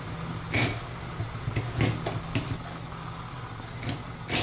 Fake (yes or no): no